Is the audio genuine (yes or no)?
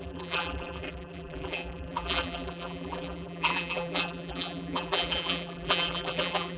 no